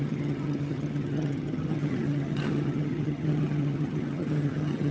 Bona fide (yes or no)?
no